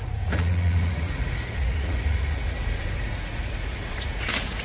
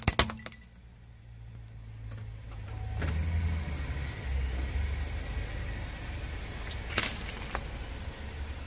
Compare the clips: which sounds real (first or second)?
second